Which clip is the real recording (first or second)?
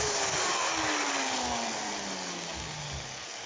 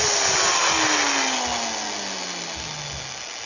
second